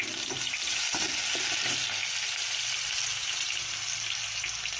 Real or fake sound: real